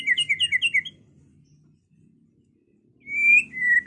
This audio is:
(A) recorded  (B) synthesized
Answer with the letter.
A